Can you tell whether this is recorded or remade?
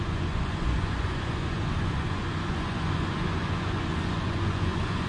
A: remade